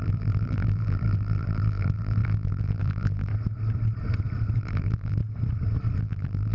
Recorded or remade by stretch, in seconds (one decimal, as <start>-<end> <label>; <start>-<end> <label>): 0.0-3.3 remade; 3.3-4.6 recorded; 4.6-5.2 remade; 5.2-6.0 recorded; 6.0-6.5 remade